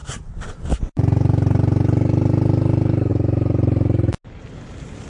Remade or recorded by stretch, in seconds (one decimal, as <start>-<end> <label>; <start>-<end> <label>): 0.0-5.1 recorded